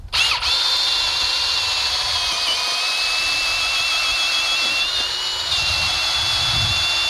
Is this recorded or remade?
recorded